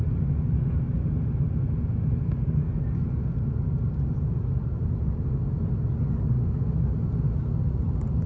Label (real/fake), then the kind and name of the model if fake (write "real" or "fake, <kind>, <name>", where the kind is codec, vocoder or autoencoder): real